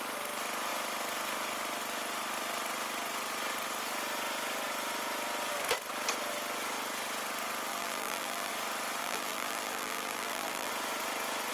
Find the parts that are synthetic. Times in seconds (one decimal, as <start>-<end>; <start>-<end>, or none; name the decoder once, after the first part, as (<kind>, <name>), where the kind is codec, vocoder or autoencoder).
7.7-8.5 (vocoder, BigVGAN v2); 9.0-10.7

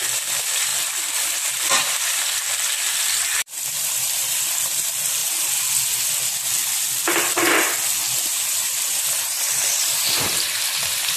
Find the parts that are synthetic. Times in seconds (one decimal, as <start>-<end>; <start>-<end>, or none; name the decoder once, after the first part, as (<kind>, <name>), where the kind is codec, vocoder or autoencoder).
0.0-5.2 (vocoder, BigVGAN v2); 9.4-11.2

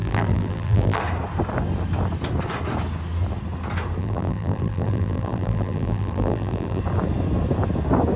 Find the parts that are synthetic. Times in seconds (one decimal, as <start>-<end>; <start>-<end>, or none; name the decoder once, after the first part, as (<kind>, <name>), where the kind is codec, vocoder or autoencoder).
0.0-1.0 (vocoder, BigVGAN v2); 4.0-6.8

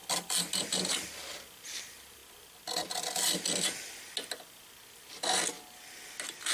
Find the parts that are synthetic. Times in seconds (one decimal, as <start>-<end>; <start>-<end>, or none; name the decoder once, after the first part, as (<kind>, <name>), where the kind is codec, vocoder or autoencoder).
none

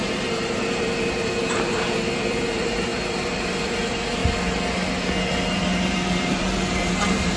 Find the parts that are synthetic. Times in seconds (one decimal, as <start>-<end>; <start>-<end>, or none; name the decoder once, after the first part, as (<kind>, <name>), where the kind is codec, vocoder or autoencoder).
0.0-4.2 (vocoder, BigVGAN v2); 5.5-7.4

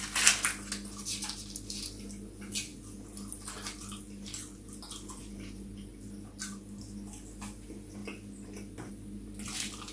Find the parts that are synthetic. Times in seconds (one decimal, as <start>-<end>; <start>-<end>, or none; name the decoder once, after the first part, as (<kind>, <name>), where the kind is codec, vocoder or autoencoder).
5.2-5.9 (vocoder, BigVGAN v2)